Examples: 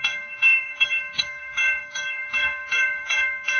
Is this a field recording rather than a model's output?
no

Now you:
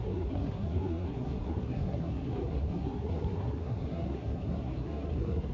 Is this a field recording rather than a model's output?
no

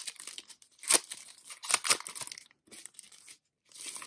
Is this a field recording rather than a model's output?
yes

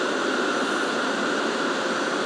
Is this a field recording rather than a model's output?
yes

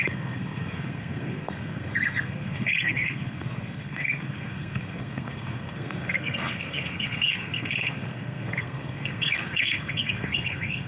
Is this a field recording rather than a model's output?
no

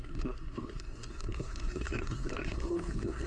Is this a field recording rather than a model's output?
no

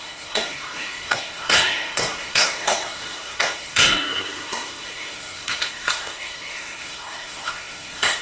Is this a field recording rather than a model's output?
no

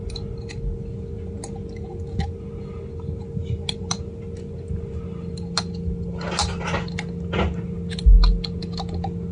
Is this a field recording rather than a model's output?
yes